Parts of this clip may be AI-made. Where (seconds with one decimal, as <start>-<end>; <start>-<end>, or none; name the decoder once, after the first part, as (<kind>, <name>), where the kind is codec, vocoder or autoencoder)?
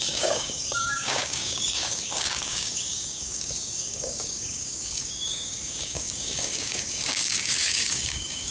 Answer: 0.0-8.5 (codec, DAC)